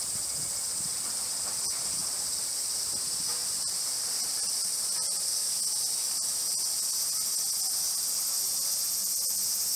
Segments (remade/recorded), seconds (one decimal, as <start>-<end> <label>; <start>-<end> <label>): 0.0-2.0 recorded; 2.0-2.9 remade; 2.9-3.4 recorded; 3.4-5.3 remade; 5.3-9.8 recorded